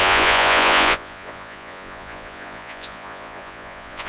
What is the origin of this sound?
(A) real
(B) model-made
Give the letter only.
B